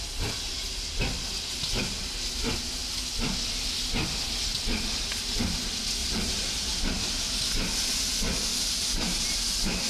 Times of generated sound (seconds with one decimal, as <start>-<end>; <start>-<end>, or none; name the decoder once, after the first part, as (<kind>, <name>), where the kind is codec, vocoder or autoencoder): 0.5-1.0 (vocoder, BigVGAN v2); 6.0-6.8; 8.5-9.5